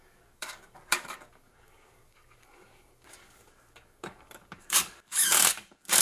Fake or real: fake